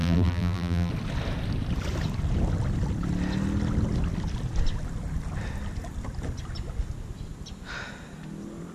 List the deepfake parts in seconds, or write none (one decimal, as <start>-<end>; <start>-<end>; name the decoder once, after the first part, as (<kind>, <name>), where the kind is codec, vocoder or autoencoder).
0.0-0.9 (vocoder, BigVGAN v2)